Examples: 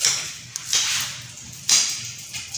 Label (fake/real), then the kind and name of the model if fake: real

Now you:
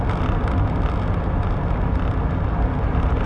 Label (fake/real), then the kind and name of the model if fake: real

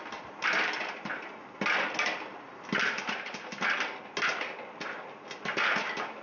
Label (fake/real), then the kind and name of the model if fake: real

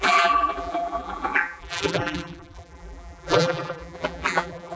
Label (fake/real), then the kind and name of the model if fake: fake, vocoder, BigVGAN v2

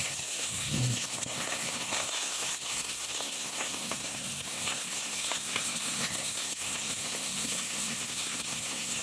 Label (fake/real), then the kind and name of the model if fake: fake, codec, SNAC